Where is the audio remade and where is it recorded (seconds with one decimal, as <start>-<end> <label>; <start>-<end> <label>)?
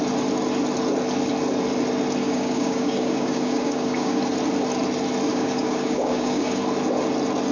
0.0-2.2 recorded; 2.2-4.2 remade; 4.2-5.3 recorded; 5.3-6.6 remade; 6.6-7.5 recorded